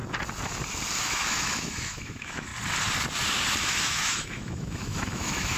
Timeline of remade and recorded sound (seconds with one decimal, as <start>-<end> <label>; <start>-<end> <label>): 0.0-1.0 recorded; 1.0-2.5 remade; 2.5-3.6 recorded; 3.6-5.6 remade